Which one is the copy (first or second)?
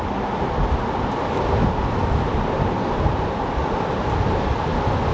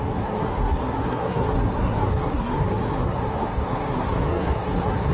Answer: second